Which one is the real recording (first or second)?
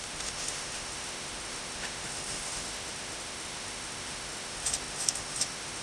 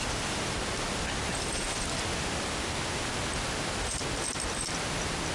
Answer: second